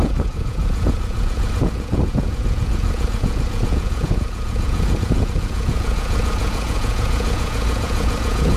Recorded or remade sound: remade